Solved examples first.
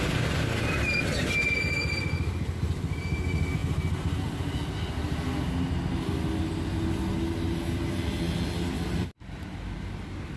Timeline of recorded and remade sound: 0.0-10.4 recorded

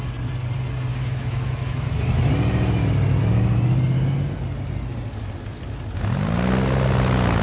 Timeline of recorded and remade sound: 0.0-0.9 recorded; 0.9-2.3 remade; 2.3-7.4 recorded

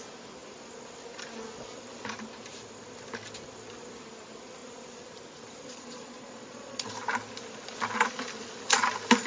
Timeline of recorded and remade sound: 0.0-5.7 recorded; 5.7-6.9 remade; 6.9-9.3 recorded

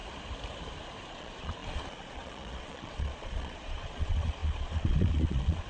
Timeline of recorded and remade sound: 0.0-1.1 recorded; 1.1-5.7 remade

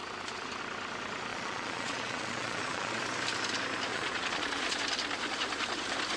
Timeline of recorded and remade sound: 0.0-1.3 recorded; 1.3-3.0 remade; 3.0-3.9 recorded; 3.9-4.8 remade; 4.8-6.2 recorded

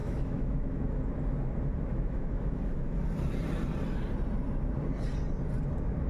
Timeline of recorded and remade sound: 0.0-1.0 remade; 1.0-1.9 recorded; 1.9-2.6 remade; 2.6-6.1 recorded

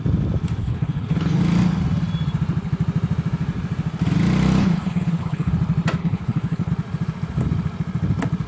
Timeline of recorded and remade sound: 0.0-0.6 recorded; 0.6-1.4 remade; 1.4-4.6 recorded; 4.6-5.5 remade; 5.5-6.0 recorded; 6.0-6.7 remade; 6.7-8.5 recorded